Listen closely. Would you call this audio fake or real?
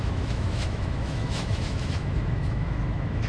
fake